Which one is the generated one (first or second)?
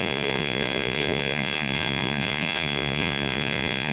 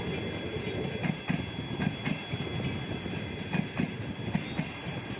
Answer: first